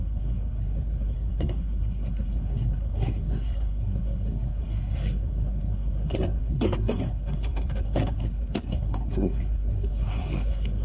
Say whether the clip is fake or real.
fake